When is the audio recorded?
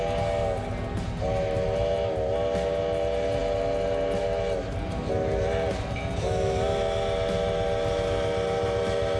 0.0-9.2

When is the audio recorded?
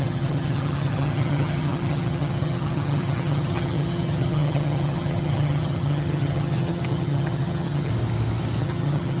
7.9-8.6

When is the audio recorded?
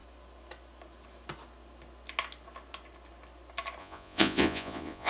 0.0-3.8